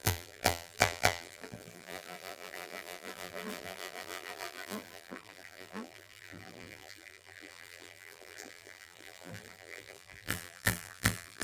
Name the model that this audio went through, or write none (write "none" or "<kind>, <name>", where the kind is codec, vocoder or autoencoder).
vocoder, BigVGAN v2